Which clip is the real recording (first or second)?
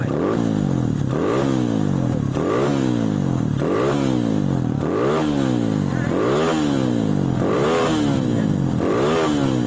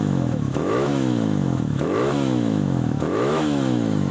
first